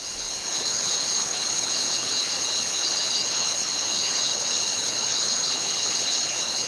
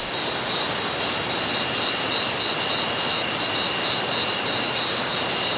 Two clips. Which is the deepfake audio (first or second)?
first